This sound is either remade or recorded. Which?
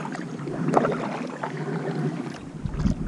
remade